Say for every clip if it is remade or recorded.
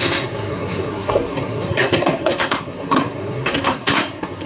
remade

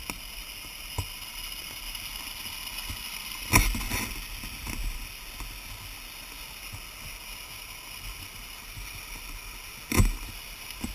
recorded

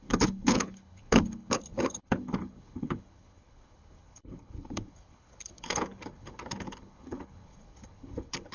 remade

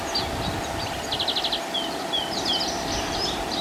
recorded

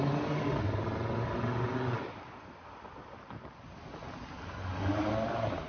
recorded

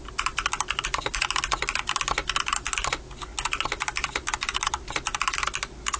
recorded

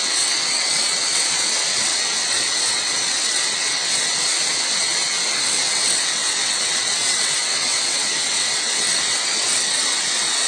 remade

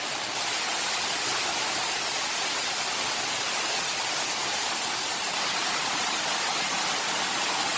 recorded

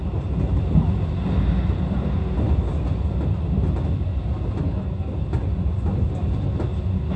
recorded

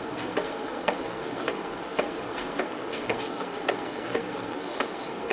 remade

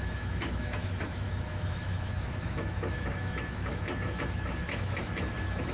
remade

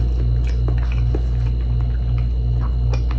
recorded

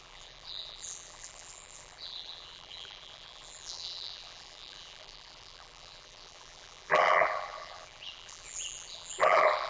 remade